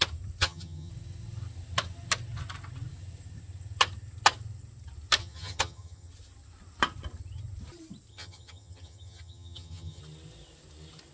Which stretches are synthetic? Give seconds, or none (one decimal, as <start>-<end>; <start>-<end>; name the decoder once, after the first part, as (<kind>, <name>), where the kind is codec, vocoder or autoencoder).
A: 0.4-0.9 (vocoder, HiFi-GAN); 5.2-6.1; 8.1-10.0